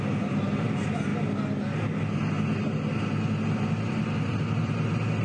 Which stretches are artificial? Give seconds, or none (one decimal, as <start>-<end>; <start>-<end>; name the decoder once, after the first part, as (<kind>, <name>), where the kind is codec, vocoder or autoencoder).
0.0-1.1 (vocoder, BigVGAN v2); 3.5-5.2